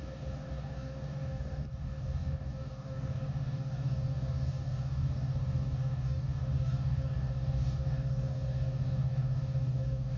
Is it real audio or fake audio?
fake